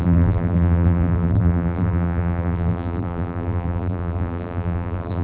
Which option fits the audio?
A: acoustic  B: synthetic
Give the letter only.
B